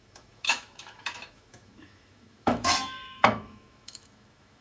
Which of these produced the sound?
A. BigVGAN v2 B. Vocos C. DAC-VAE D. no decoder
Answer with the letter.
C